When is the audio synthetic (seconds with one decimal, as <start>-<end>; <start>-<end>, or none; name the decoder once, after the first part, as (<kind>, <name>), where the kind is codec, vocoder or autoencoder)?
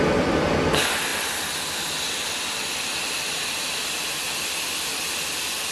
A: none